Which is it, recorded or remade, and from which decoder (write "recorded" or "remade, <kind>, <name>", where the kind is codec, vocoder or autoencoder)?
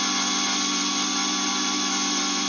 recorded